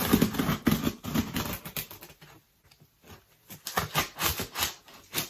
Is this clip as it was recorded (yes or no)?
yes